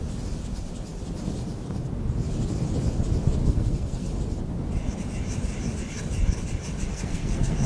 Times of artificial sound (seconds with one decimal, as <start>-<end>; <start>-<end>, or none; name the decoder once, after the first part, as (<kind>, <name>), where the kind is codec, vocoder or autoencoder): 3.4-4.1 (codec, SNAC); 6.9-7.7